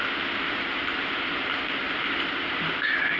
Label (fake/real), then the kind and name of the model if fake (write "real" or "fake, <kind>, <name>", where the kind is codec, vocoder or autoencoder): real